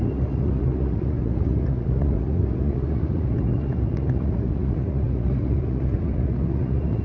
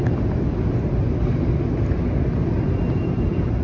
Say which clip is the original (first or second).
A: second